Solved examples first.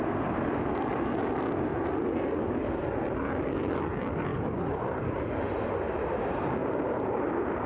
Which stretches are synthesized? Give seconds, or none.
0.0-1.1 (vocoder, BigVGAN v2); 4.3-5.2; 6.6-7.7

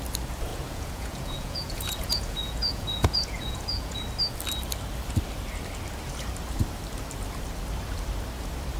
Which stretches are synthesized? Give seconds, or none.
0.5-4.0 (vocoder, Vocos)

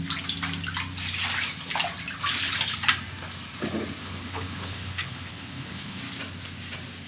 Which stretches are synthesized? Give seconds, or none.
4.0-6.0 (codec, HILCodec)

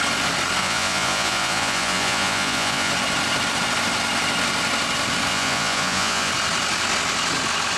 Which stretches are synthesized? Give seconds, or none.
0.6-2.9 (vocoder, Vocos); 5.3-6.3

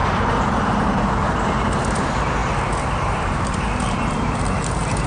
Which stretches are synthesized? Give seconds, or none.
0.0-2.4 (vocoder, BigVGAN v2); 3.0-5.1

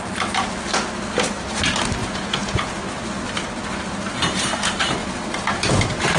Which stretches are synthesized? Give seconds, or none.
2.0-2.8 (vocoder, Vocos)

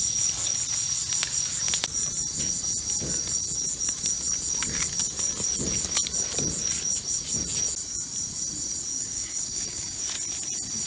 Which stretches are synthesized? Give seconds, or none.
8.9-10.0 (codec, DAC)